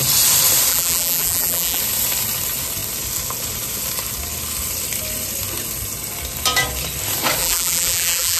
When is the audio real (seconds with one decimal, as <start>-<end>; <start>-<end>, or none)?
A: 0.0-0.7; 1.8-7.4